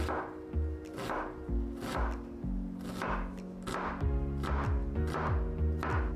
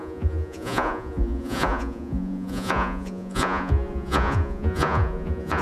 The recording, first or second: first